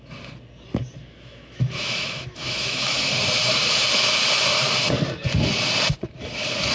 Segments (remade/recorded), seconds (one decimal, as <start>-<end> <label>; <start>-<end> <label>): 0.0-1.0 recorded; 1.0-3.1 remade; 3.1-6.7 recorded